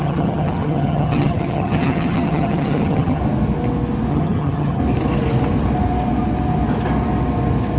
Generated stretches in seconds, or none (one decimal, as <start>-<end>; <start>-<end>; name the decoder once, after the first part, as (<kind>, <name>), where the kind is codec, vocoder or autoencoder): 0.0-3.2 (vocoder, HiFi-GAN); 4.1-4.8